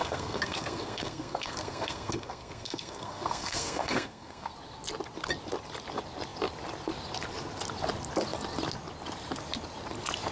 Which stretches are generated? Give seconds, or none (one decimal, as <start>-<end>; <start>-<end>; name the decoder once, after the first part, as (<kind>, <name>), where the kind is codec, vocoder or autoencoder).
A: 0.0-4.5 (codec, SNAC)

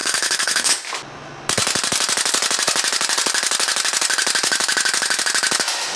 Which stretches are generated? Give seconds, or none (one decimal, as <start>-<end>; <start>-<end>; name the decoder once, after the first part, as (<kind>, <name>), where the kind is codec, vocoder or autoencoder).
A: 0.0-0.7 (codec, SNAC)

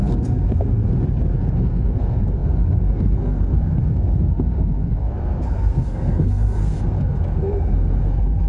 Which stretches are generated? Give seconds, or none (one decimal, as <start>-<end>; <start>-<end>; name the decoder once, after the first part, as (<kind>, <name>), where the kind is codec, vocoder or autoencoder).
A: 0.0-0.8 (codec, SNAC); 1.3-8.5

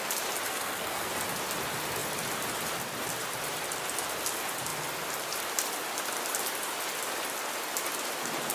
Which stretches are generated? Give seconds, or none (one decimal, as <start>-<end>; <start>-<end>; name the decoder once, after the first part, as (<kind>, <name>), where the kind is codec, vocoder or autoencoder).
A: 0.5-1.1 (codec, SNAC)